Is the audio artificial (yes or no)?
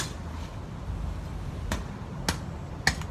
no